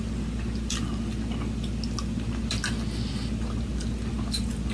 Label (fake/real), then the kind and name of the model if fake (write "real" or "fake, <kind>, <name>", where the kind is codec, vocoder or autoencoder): real